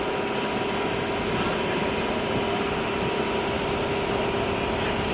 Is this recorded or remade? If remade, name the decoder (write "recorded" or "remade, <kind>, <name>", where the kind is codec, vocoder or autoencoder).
recorded